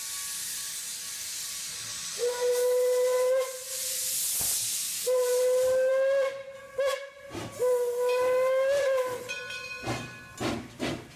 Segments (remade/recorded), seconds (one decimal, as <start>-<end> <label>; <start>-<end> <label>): 0.0-11.2 recorded